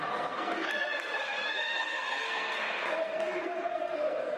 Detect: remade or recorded remade